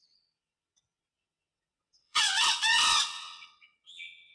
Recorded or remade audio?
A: remade